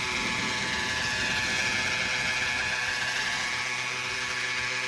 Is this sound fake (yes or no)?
no